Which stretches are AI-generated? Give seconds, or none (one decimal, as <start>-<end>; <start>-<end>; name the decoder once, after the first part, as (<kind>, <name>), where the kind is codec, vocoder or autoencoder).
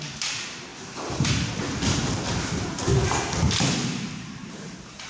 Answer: 0.0-2.9 (vocoder, BigVGAN v2); 3.7-5.1